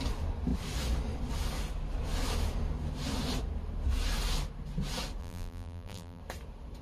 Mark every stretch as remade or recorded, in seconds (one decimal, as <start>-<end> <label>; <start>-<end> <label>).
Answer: 0.0-5.2 recorded; 5.2-6.2 remade; 6.2-6.8 recorded